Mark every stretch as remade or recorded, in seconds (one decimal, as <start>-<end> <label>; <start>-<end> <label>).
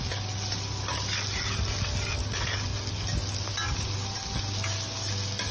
0.0-5.5 recorded